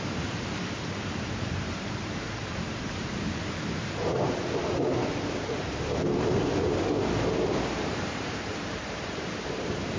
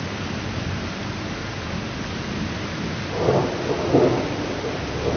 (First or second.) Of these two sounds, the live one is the second